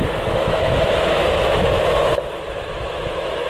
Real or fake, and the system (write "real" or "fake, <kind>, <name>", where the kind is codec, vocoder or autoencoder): fake, autoencoder, DAC-VAE